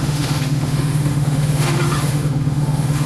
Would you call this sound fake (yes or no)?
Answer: yes